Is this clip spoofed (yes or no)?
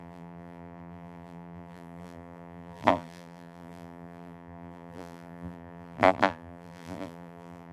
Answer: yes